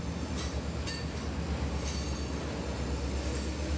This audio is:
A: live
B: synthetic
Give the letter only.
A